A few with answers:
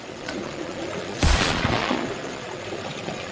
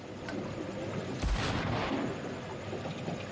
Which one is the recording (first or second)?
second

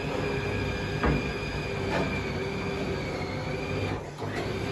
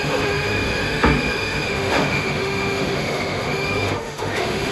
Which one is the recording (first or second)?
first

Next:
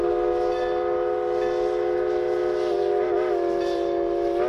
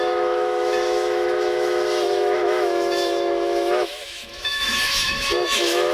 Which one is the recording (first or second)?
first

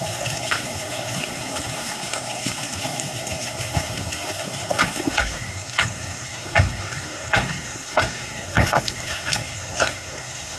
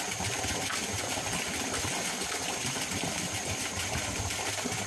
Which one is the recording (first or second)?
second